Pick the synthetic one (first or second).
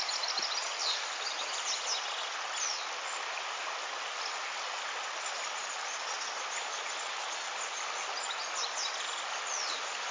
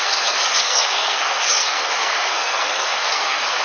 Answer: second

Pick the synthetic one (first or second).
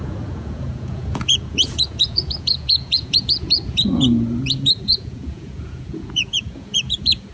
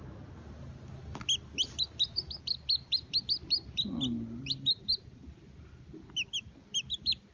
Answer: first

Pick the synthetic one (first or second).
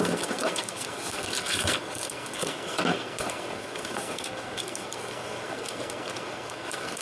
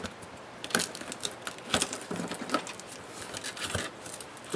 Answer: first